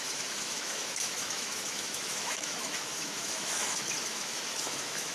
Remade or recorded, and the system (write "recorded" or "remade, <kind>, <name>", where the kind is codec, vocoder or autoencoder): remade, autoencoder, DAC-VAE